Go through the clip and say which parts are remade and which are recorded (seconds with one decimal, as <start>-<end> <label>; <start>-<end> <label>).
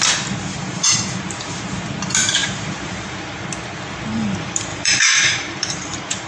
0.0-0.5 recorded; 0.5-1.6 remade; 1.6-2.4 recorded; 2.4-3.4 remade; 3.4-4.7 recorded; 4.7-6.3 remade